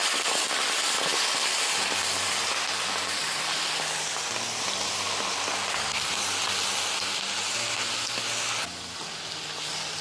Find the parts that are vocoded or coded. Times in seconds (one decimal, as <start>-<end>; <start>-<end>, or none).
none